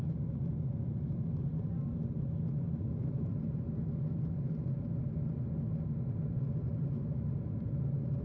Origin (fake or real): real